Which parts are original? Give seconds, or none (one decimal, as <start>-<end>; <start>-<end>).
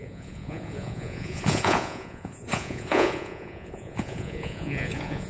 none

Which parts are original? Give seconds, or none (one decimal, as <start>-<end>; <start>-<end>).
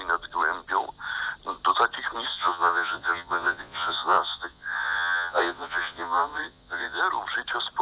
0.0-2.3; 7.0-7.8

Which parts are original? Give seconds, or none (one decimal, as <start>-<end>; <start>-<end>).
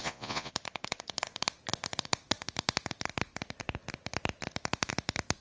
0.5-5.4